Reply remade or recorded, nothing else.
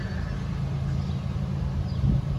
recorded